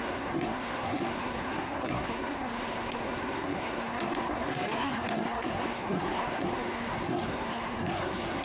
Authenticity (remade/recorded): remade